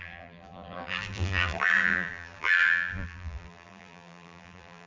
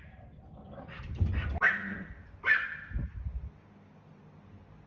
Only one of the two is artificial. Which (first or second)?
first